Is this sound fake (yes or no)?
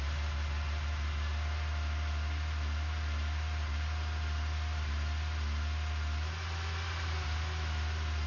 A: no